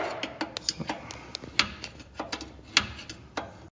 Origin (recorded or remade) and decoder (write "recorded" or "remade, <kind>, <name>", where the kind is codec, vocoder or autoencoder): recorded